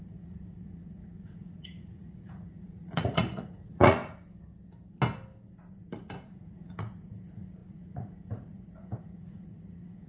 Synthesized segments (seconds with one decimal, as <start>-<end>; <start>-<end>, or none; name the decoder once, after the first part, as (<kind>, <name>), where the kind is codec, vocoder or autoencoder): 0.0-4.0 (vocoder, Vocos); 5.7-10.1